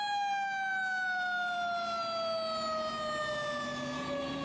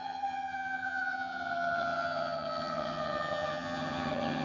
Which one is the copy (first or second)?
second